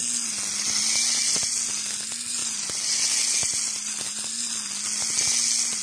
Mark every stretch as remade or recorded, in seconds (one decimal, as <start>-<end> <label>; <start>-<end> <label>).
0.0-5.8 recorded